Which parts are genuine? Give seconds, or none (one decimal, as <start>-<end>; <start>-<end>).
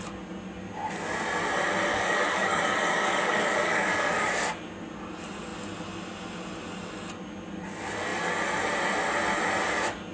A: 0.0-1.9; 4.4-10.1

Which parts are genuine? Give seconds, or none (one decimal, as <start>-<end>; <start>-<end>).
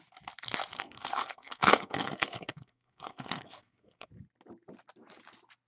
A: 0.0-0.7; 4.1-5.7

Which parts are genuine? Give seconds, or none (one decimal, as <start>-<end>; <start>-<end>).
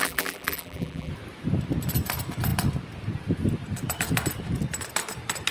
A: 1.1-5.5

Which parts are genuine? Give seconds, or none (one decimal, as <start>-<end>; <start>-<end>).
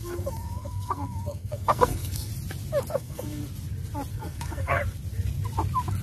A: 2.3-2.9; 3.4-4.1; 4.8-6.0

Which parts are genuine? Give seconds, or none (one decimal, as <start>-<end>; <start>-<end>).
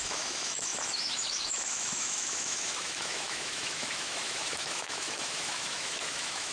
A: none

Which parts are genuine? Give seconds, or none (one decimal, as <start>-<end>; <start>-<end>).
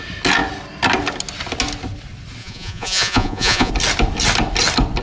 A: 0.0-2.4; 3.7-5.0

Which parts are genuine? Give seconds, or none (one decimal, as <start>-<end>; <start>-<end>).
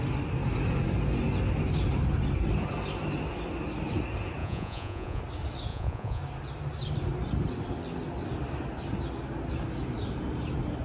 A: 0.0-4.4; 5.2-5.7; 6.2-10.8